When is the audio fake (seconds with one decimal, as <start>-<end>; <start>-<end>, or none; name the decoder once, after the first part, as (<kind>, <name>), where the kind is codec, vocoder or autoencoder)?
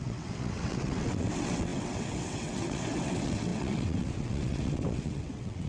0.0-5.7 (vocoder, WaveNeXt)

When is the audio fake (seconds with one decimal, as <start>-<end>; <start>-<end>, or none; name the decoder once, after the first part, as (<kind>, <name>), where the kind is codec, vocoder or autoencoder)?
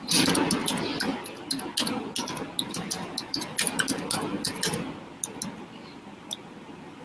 none